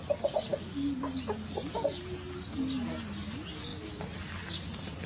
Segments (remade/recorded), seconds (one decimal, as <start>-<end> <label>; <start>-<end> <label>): 0.0-0.5 recorded; 0.5-1.0 remade; 1.0-5.1 recorded